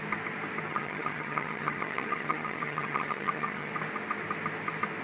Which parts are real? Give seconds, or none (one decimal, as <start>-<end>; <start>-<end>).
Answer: 0.0-0.7; 3.7-5.0